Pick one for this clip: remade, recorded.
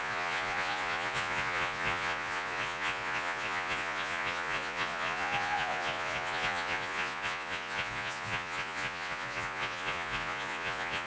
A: remade